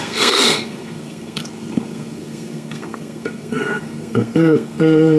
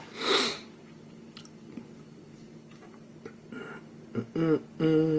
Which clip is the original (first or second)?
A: second